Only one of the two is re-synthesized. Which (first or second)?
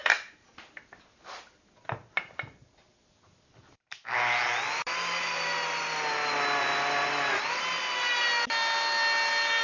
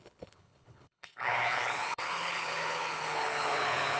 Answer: second